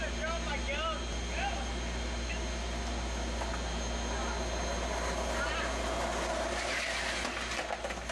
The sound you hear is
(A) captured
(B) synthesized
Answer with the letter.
A